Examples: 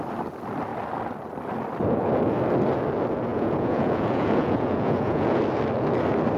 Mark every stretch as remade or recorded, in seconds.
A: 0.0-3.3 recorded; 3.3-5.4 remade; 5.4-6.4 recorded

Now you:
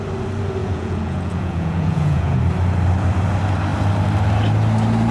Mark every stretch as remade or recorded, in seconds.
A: 0.0-0.6 recorded; 0.6-2.4 remade; 2.4-5.1 recorded

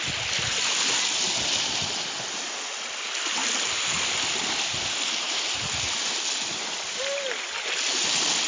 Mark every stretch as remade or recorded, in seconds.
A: 0.0-8.5 recorded